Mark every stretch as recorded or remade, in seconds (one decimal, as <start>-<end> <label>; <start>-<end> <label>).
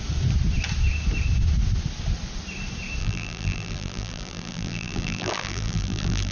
0.0-3.0 recorded; 3.0-6.3 remade